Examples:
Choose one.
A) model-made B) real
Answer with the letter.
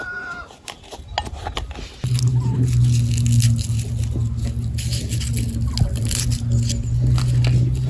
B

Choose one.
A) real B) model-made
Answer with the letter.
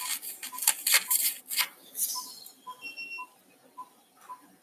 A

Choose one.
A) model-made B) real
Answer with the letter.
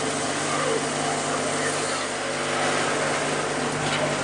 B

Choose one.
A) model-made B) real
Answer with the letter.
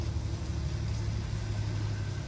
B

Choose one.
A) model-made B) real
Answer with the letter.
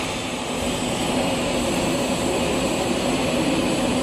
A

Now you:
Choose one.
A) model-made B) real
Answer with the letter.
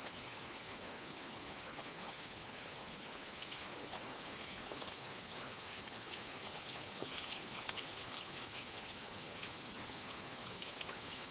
A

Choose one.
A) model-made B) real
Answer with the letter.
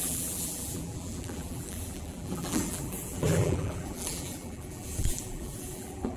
A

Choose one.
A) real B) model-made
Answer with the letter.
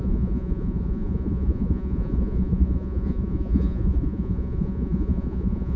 B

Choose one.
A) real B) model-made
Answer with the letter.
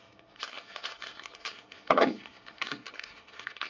B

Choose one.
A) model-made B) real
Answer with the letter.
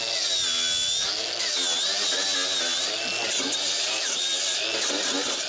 B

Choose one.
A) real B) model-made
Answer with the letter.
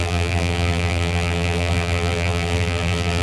B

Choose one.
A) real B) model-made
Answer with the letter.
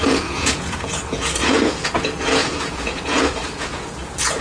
B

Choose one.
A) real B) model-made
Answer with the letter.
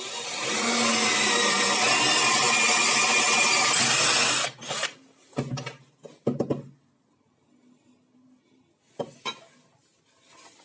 A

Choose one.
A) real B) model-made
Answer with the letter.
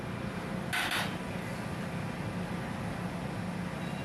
A